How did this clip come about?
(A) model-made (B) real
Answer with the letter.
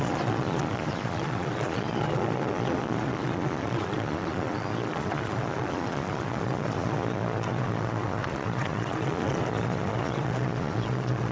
A